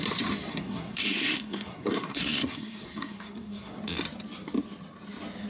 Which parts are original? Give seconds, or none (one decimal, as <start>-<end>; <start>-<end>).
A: 0.0-0.5; 3.8-5.5